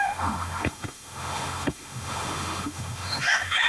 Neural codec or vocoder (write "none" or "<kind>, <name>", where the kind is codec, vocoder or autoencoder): autoencoder, DAC-VAE